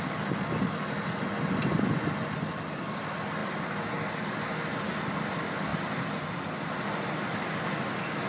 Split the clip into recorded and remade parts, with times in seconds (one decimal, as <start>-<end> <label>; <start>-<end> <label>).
0.0-8.3 recorded